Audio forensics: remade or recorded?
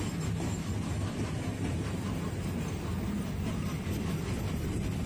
recorded